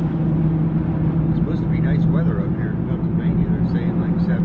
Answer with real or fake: real